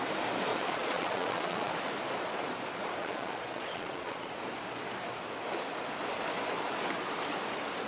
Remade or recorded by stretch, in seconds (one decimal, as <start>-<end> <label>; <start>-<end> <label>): 0.0-0.5 recorded; 0.5-1.7 remade; 1.7-3.0 recorded; 3.0-4.3 remade; 4.3-7.9 recorded